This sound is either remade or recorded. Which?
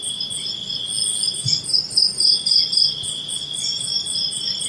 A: recorded